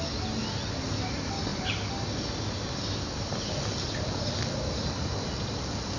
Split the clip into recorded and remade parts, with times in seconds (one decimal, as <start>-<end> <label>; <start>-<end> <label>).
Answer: 0.0-6.0 recorded